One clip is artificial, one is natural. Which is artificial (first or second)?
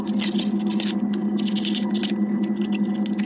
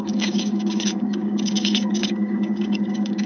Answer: second